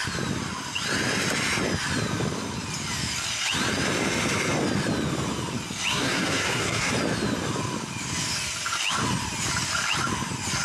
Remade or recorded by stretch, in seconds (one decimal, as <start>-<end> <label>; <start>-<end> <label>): 0.0-5.9 recorded; 5.9-6.9 remade; 6.9-10.6 recorded